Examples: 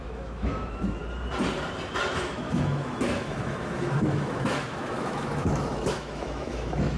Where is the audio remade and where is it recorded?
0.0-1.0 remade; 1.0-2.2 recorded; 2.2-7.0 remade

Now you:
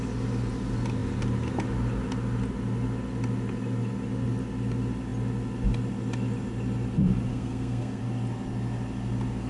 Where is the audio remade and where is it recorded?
0.0-7.3 recorded; 7.3-8.0 remade; 8.0-9.5 recorded

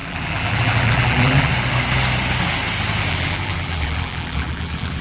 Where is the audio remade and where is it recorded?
0.0-1.5 remade; 1.5-3.1 recorded; 3.1-5.0 remade

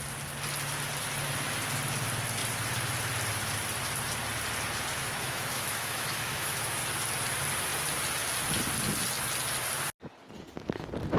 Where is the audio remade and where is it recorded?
0.0-4.9 recorded; 4.9-6.8 remade; 6.8-11.2 recorded

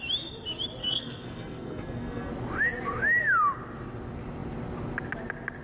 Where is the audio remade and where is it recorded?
0.0-0.8 recorded; 0.8-2.3 remade; 2.3-5.6 recorded

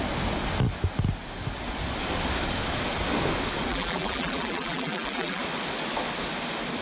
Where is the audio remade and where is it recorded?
0.0-3.7 recorded; 3.7-5.4 remade; 5.4-6.8 recorded

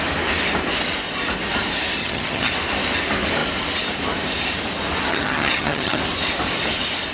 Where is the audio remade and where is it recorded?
0.0-2.0 recorded; 2.0-2.5 remade; 2.5-5.1 recorded; 5.1-6.0 remade; 6.0-7.1 recorded

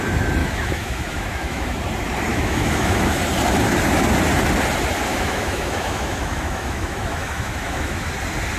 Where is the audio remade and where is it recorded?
0.0-0.4 recorded; 0.4-1.8 remade; 1.8-2.3 recorded; 2.3-3.2 remade; 3.2-5.1 recorded; 5.1-8.1 remade; 8.1-8.6 recorded